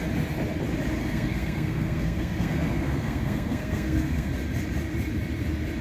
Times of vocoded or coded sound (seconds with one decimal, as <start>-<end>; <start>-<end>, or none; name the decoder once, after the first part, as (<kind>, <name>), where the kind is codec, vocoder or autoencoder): 1.0-4.3 (codec, SNAC)